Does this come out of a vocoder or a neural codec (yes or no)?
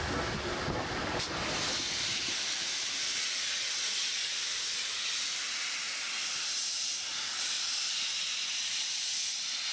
no